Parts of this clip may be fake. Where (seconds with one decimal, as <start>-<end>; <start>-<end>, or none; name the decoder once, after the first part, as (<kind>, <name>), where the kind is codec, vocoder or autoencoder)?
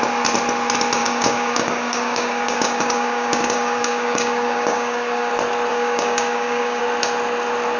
1.0-5.3 (codec, DAC); 5.7-6.8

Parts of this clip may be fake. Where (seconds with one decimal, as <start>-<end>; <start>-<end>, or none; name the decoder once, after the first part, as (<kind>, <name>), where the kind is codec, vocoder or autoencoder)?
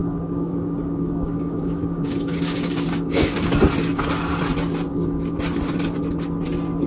0.0-3.5 (codec, DAC); 4.9-5.4